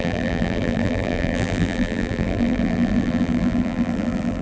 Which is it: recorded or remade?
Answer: remade